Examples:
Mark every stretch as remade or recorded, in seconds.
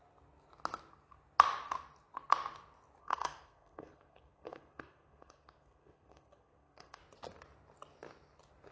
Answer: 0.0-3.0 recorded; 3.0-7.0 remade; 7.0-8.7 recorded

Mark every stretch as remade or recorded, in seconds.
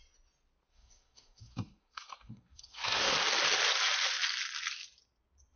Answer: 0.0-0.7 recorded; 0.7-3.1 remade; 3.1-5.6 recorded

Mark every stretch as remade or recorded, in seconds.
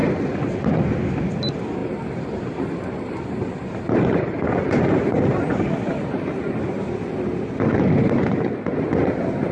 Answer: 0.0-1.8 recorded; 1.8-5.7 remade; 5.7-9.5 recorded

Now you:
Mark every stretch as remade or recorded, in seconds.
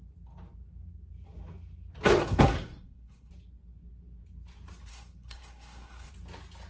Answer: 0.0-2.2 recorded; 2.2-3.3 remade; 3.3-4.9 recorded; 4.9-6.1 remade; 6.1-6.7 recorded